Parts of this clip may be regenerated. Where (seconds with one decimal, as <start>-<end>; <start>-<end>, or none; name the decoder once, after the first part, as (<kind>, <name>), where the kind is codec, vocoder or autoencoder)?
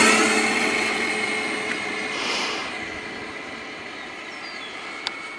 0.5-1.1 (vocoder, WaveNeXt)